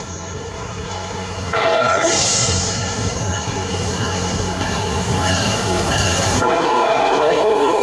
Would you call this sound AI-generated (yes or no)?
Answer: yes